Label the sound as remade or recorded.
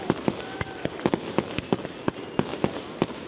recorded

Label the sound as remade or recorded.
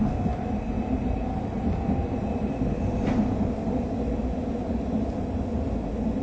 recorded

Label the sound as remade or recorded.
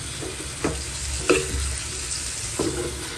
recorded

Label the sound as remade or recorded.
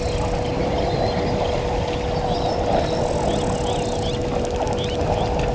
recorded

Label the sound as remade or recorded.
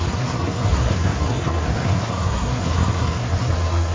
remade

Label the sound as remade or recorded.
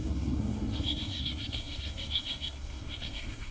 remade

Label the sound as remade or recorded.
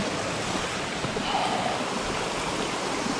recorded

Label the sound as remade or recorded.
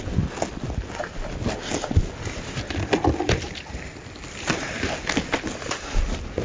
recorded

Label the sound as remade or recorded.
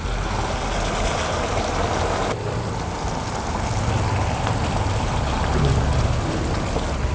recorded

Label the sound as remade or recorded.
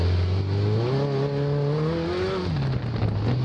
recorded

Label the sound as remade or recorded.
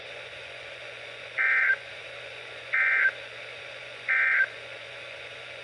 remade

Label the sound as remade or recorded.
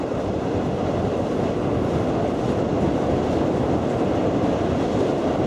recorded